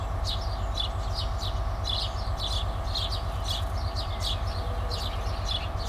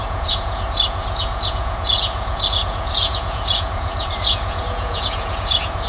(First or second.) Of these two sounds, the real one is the first